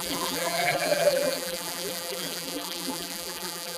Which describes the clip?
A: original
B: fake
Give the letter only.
B